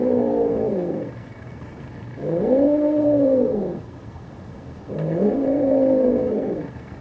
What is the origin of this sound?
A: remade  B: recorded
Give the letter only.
A